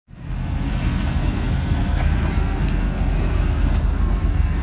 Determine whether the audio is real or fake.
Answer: fake